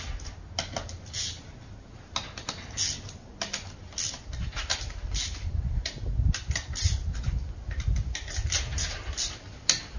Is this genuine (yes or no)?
yes